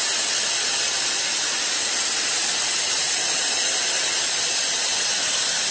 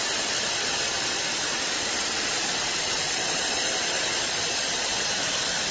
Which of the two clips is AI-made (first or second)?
second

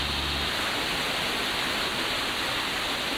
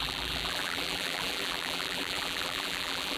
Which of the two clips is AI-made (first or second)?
second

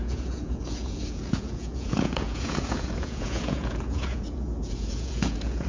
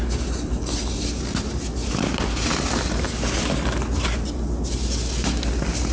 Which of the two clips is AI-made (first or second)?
first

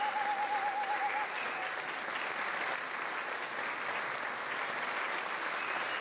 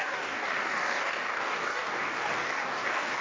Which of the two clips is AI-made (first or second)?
second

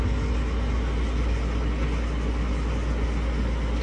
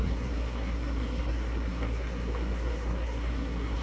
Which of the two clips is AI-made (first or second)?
second